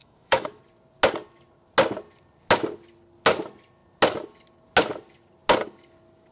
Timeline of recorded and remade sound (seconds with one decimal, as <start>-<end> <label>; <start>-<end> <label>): 0.0-0.6 remade; 0.6-6.3 recorded